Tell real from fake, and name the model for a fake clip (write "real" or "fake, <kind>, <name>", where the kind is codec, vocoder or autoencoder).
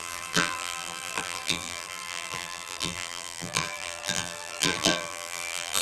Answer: fake, vocoder, BigVGAN v2